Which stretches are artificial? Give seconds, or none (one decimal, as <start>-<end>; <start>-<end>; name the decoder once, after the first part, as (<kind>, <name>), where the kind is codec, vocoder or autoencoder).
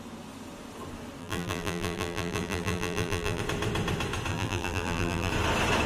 1.2-3.4 (vocoder, BigVGAN v2); 4.3-5.3